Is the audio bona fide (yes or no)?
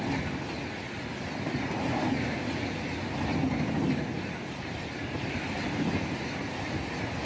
yes